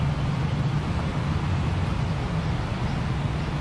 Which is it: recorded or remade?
recorded